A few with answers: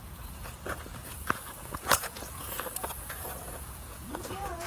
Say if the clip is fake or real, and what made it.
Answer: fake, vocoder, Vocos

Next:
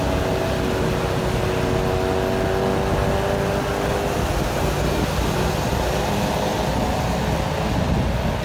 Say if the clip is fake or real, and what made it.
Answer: real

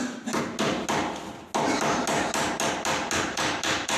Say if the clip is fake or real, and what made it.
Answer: real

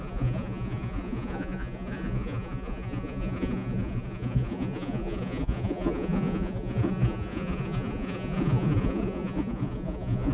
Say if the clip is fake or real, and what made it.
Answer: fake, vocoder, Vocos